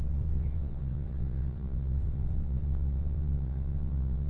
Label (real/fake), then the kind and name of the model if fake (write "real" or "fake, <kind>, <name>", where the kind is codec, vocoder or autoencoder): fake, vocoder, WaveNeXt